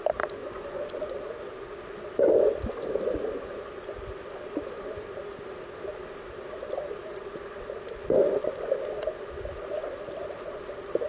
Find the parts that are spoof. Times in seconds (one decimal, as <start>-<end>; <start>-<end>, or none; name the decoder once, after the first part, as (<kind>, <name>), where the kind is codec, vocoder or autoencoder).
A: 0.4-1.1 (vocoder, Vocos)